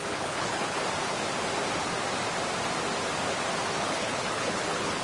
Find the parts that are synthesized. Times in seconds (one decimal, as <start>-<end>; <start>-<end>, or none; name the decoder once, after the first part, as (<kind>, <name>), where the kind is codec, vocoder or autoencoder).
0.0-0.8 (codec, HILCodec); 3.8-5.0